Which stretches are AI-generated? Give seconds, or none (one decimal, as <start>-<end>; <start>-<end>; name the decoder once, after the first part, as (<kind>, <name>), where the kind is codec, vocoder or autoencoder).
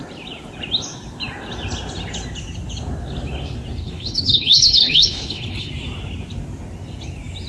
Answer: 3.8-5.7 (codec, HILCodec)